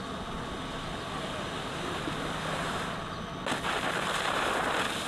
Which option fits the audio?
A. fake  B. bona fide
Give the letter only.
B